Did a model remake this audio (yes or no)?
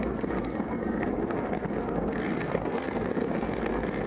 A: yes